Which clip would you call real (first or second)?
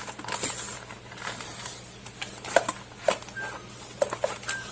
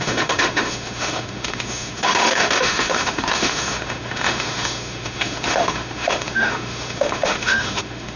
first